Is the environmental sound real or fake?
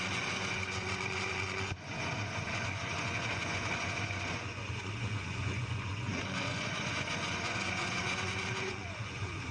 fake